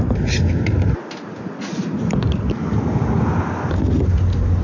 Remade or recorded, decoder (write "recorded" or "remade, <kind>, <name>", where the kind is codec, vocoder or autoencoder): recorded